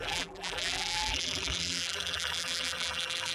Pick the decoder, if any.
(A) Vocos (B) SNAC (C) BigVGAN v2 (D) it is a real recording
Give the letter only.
C